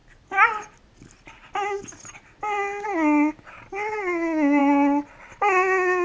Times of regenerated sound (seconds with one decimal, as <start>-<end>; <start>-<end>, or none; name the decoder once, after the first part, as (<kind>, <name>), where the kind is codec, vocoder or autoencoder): none